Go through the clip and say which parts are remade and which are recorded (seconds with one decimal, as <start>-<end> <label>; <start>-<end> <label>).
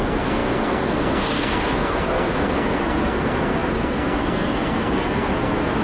0.0-5.8 remade